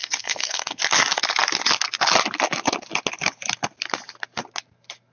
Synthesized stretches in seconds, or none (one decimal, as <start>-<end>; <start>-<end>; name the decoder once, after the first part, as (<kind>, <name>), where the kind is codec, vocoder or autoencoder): 0.0-0.8 (codec, SNAC)